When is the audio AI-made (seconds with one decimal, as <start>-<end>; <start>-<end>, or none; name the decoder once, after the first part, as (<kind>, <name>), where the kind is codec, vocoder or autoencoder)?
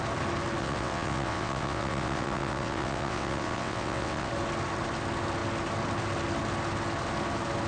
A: 0.6-4.3 (vocoder, WaveNeXt)